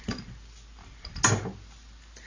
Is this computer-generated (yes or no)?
no